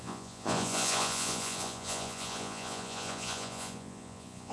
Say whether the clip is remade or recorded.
remade